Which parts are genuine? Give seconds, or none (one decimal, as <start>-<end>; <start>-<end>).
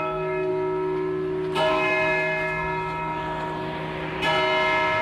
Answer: 0.5-1.7; 3.2-5.0